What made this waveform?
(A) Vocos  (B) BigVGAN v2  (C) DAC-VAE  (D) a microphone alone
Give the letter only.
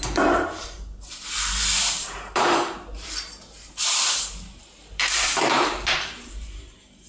B